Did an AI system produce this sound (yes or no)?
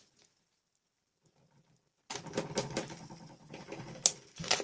no